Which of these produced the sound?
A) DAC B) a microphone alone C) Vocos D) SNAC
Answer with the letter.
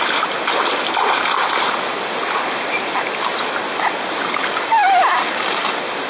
B